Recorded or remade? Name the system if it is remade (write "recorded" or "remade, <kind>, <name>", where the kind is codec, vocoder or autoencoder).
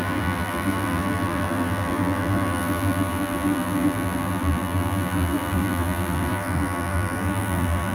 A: remade, vocoder, BigVGAN v2